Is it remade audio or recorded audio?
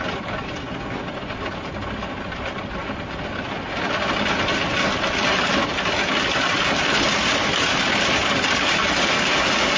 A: recorded